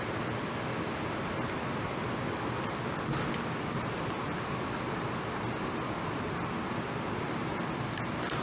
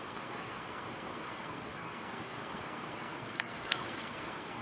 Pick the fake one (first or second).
second